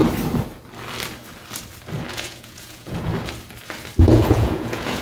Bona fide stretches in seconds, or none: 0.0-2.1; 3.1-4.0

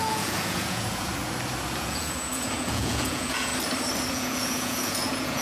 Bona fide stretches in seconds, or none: 1.1-1.8; 3.5-4.1

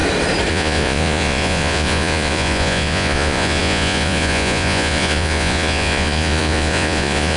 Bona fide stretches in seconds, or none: 0.0-0.5

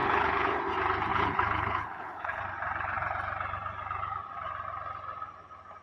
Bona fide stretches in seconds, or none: 0.6-1.1; 2.4-5.8

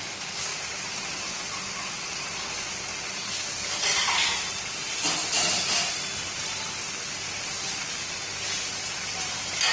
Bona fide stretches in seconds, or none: 0.0-0.5; 2.4-9.7

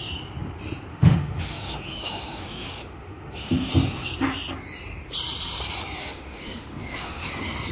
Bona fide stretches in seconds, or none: 0.0-0.9; 3.7-6.0; 7.3-7.7

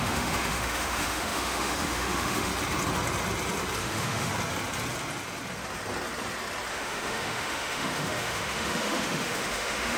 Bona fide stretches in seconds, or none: 2.5-3.8; 4.3-6.7

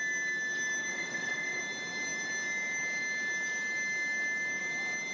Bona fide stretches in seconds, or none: 0.0-0.9; 1.6-5.1